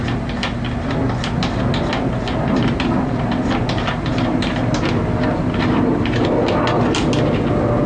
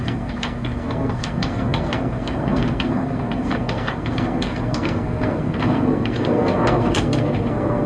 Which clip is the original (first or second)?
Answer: first